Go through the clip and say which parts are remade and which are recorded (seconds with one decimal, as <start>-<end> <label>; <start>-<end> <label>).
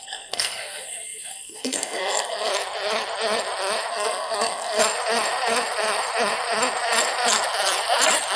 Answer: 0.0-2.5 remade; 2.5-3.9 recorded; 3.9-4.8 remade; 4.8-8.4 recorded